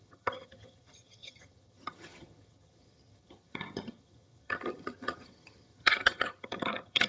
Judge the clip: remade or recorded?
remade